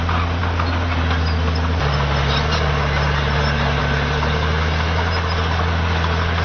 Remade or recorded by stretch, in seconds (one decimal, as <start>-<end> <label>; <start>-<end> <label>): 0.0-6.4 recorded